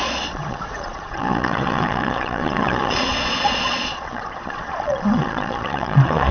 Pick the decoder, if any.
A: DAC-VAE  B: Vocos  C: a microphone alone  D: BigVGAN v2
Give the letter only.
B